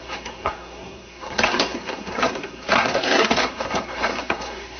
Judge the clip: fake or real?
fake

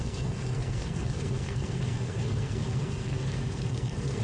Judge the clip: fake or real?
fake